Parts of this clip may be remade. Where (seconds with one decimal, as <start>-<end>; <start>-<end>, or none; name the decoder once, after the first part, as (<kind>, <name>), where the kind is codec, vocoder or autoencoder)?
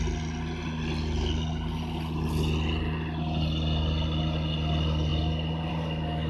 none